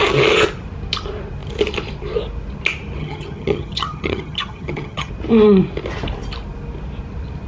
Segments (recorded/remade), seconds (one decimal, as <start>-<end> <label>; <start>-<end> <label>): 0.0-3.0 recorded; 3.0-5.1 remade; 5.1-7.5 recorded